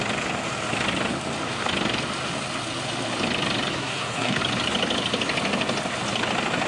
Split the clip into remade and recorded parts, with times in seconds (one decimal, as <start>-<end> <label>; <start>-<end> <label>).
0.0-3.7 recorded; 3.7-4.4 remade; 4.4-6.7 recorded